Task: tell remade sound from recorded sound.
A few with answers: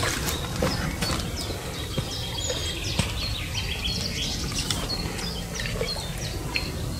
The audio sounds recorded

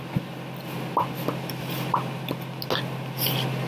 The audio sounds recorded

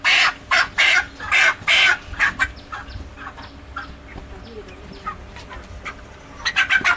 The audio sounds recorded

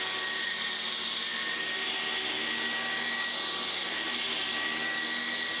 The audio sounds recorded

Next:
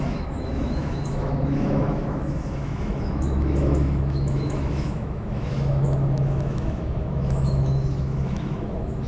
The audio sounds remade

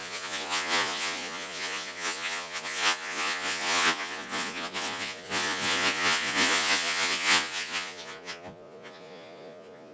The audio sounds remade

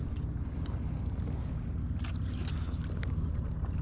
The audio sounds recorded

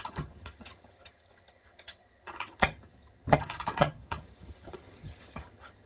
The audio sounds remade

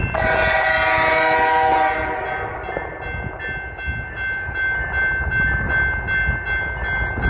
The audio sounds recorded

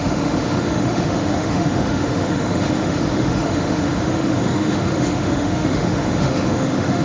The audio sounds remade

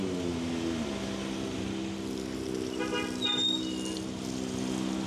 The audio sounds recorded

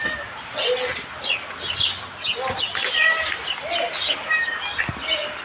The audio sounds recorded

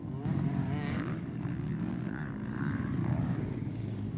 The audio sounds remade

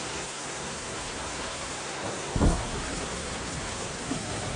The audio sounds remade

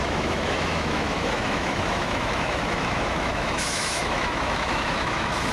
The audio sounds remade